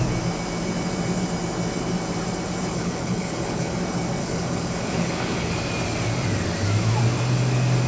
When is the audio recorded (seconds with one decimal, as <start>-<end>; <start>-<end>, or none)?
0.0-2.7; 3.8-4.2; 5.5-7.9